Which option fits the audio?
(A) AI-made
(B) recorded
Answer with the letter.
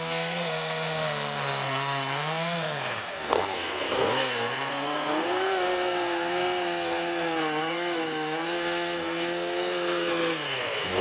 A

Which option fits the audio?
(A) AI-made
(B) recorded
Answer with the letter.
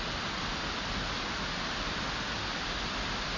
B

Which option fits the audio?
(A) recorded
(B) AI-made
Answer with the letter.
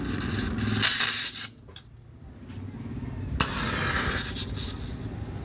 A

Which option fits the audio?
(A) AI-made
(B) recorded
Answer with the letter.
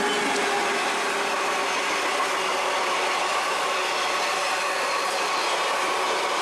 B